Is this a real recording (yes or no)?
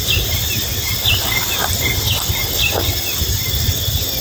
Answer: yes